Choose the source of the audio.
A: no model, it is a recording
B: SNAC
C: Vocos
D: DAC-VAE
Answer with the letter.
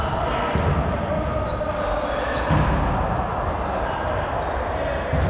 A